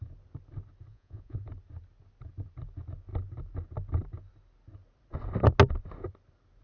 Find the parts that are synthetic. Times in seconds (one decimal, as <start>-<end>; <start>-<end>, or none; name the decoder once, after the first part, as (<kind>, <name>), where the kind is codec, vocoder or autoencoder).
0.9-1.5 (vocoder, Vocos)